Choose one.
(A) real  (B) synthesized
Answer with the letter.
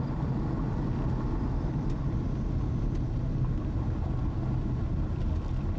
A